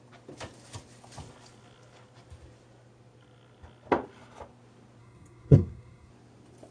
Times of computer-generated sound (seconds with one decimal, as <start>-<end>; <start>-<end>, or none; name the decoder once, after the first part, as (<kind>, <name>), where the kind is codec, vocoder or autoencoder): 5.0-6.1 (codec, SNAC)